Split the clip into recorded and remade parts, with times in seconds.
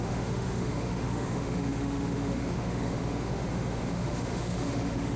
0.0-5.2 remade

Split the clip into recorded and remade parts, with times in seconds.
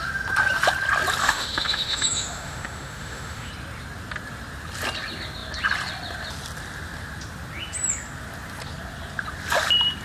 0.0-1.2 recorded; 1.2-3.5 remade; 3.5-10.0 recorded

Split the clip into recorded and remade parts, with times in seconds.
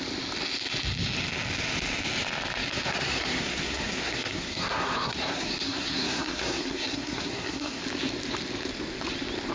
0.0-2.7 recorded; 2.7-7.8 remade; 7.8-9.5 recorded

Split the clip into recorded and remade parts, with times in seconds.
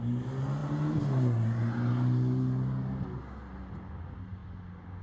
0.0-5.0 recorded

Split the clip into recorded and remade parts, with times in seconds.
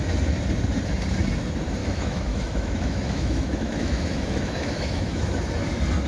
0.0-1.8 recorded; 1.8-5.5 remade; 5.5-6.1 recorded